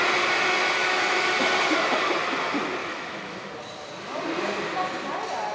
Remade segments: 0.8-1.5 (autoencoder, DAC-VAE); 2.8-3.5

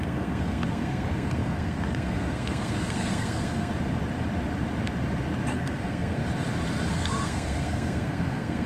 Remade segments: 0.0-3.7 (codec, SNAC); 5.5-6.2; 6.9-8.7

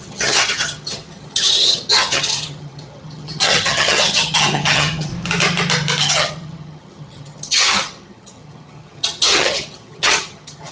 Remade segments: 0.0-5.1 (vocoder, HiFi-GAN); 6.0-10.7